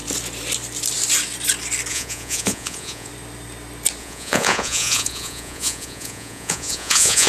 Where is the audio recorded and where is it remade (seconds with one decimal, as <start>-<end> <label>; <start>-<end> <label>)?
0.0-1.9 recorded; 1.9-3.1 remade; 3.1-4.0 recorded; 4.0-7.3 remade